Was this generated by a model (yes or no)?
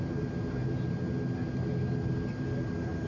no